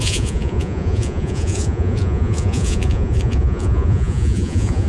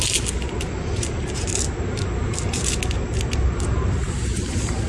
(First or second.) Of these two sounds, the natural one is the second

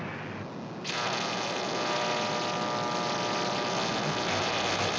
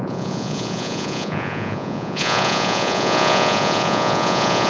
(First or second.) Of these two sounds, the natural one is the first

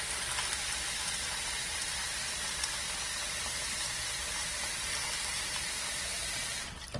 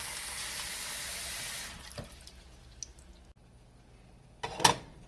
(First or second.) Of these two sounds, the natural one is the second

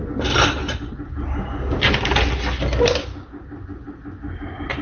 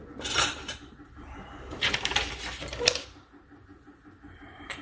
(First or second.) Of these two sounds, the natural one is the first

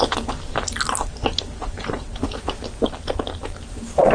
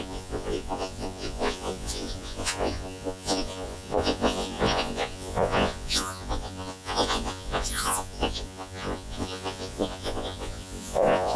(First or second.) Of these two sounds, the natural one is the first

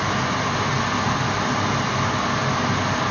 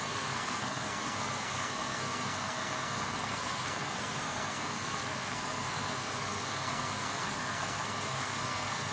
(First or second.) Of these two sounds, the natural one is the first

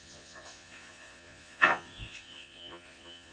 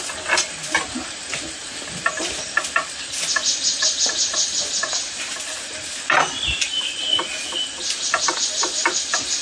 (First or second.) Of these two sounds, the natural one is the second